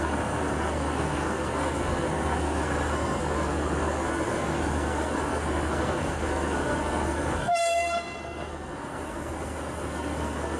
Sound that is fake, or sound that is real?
fake